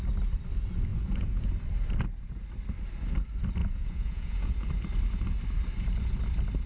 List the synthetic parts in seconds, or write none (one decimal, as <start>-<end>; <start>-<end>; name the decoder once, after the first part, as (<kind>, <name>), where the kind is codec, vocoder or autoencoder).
0.9-1.5 (vocoder, Vocos); 3.6-4.7